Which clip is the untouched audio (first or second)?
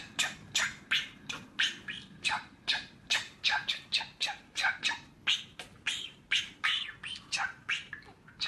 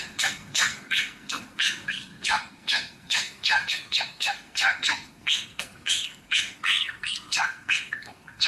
first